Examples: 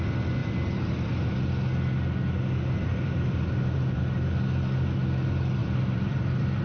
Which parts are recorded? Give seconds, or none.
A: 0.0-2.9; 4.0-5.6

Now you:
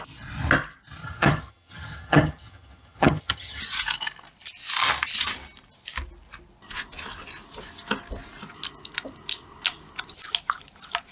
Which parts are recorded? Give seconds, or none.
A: 0.0-1.0; 3.6-11.1

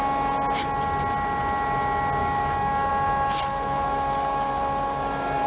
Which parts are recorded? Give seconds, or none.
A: 0.0-2.2; 2.9-3.5; 4.6-5.5

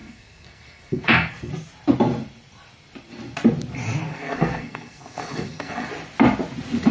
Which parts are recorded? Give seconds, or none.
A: 1.5-4.1; 5.9-6.9

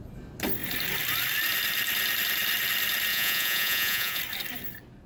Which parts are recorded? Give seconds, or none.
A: 0.0-3.1; 4.2-5.1

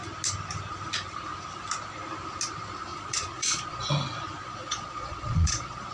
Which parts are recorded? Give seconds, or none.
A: 0.0-2.9; 3.9-4.4

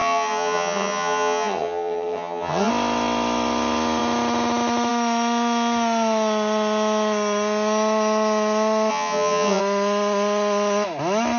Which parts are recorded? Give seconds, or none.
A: 2.7-8.9; 9.6-11.4